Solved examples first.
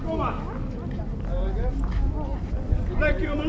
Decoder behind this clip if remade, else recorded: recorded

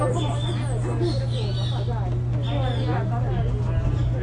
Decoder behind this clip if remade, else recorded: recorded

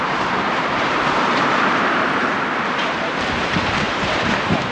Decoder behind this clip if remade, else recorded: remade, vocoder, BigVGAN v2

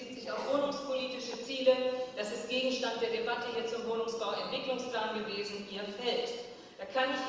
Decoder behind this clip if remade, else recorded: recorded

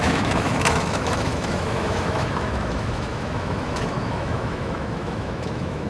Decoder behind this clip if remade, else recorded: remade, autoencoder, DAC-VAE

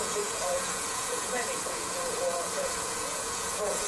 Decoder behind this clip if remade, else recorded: remade, vocoder, Vocos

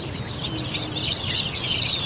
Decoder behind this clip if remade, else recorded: recorded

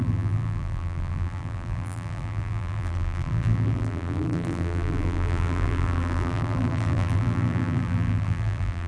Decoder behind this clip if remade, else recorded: remade, vocoder, BigVGAN v2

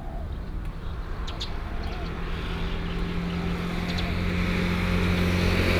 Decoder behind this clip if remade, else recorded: recorded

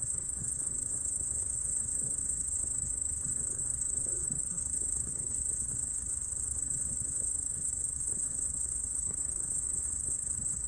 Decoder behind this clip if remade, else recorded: remade, codec, SNAC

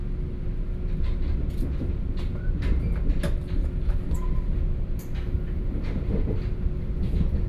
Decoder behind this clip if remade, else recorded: recorded